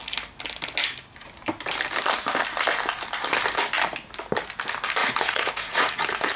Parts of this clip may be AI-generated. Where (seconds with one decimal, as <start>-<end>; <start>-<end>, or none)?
5.0-5.9